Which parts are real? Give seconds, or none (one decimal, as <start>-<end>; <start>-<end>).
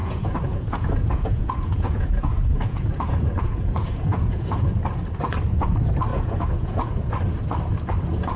4.7-6.1; 7.1-8.4